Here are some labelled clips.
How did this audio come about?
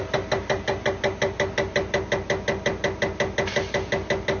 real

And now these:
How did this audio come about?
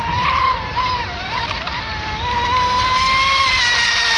fake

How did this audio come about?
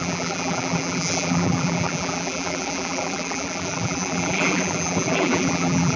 fake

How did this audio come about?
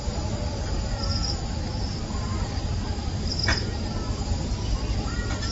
real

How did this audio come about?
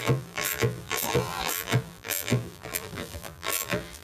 fake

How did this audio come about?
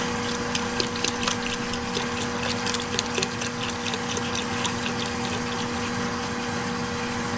real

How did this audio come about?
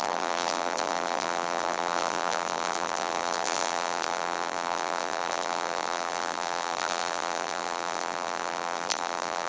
fake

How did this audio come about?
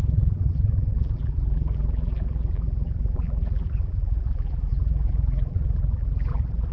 fake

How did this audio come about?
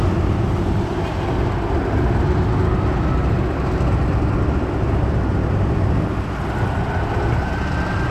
real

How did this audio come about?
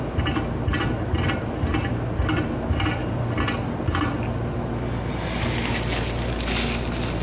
real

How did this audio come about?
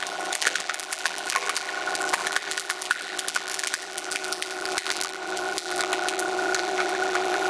fake